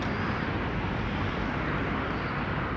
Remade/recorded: recorded